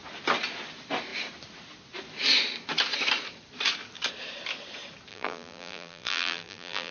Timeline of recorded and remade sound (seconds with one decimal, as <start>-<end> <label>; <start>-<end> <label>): 0.0-5.1 recorded; 5.1-6.9 remade